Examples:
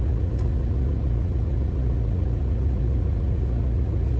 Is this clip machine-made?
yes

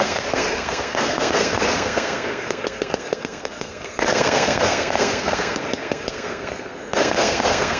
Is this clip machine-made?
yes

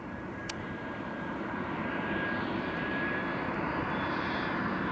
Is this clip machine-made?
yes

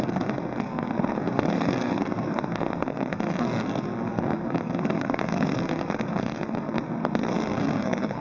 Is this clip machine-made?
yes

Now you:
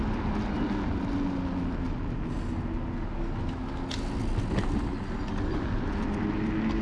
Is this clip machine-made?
no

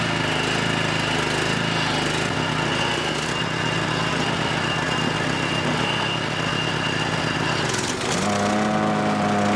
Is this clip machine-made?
no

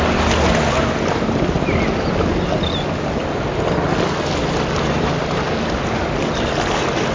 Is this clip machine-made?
no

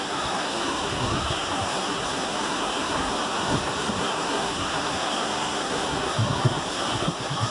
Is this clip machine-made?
yes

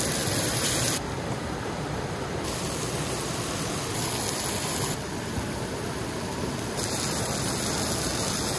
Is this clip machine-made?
no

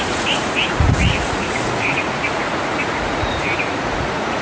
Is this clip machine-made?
yes